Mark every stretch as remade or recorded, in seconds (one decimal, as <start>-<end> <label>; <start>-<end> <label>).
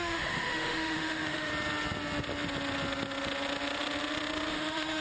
0.0-1.5 remade; 1.5-4.5 recorded; 4.5-5.0 remade